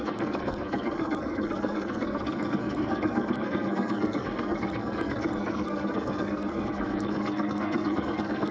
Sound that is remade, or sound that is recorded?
remade